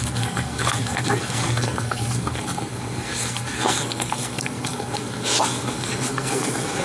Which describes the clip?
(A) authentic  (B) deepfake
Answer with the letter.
B